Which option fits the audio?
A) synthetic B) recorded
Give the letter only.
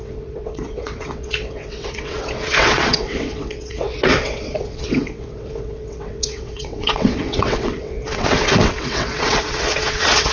A